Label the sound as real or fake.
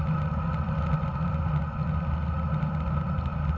real